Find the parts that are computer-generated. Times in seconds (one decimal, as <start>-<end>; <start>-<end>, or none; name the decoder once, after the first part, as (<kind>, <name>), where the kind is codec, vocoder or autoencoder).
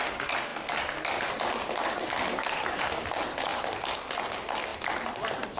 none